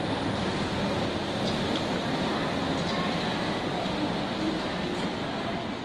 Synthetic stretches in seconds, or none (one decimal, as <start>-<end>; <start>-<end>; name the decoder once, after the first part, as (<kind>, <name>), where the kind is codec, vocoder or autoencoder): none